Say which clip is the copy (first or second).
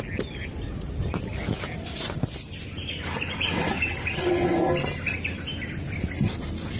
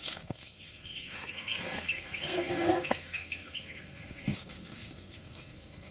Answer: second